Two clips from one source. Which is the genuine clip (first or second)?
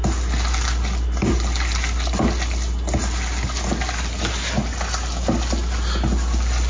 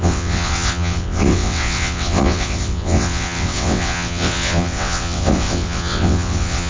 first